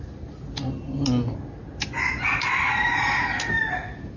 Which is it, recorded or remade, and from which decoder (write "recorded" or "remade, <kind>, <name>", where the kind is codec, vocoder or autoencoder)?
recorded